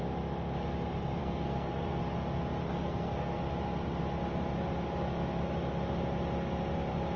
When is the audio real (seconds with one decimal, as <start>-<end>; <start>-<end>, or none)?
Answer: 0.0-1.2; 2.0-2.6; 3.4-7.2